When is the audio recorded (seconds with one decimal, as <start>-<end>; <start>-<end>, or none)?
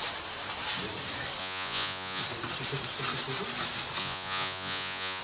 0.0-1.4; 2.2-4.0